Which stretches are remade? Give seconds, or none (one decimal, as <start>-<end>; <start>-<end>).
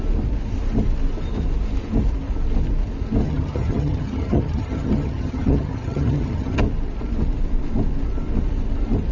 3.2-6.6